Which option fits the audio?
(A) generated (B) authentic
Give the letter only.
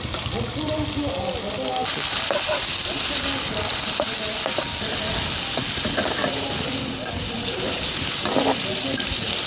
B